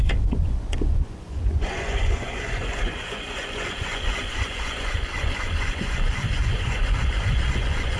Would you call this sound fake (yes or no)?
yes